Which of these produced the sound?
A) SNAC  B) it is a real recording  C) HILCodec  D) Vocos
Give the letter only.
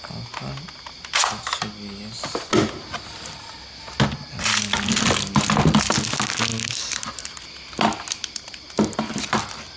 B